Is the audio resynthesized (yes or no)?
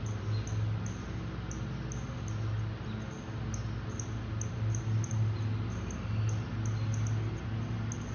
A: no